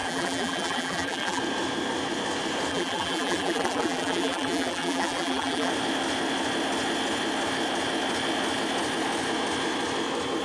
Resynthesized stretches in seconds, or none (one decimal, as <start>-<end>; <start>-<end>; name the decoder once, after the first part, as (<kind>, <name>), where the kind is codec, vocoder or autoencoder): 0.0-1.4 (vocoder, BigVGAN v2); 2.7-5.7